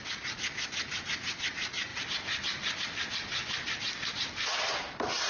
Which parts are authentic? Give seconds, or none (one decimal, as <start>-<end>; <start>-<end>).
1.2-5.3